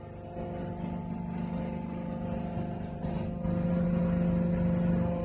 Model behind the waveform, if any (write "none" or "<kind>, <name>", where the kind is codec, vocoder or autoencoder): none